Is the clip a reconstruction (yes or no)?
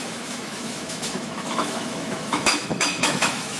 yes